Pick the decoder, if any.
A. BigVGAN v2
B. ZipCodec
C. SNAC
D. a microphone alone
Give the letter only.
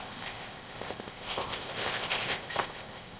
B